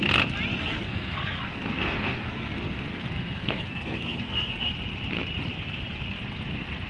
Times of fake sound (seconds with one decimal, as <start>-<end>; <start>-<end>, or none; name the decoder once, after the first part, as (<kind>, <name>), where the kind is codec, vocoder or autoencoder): 0.6-4.7 (codec, SNAC)